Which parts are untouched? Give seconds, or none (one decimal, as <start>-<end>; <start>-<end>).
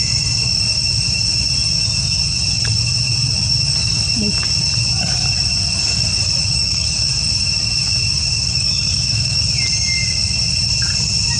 0.0-6.5; 7.1-8.3; 9.4-11.4